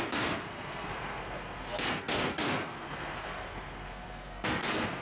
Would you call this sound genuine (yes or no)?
no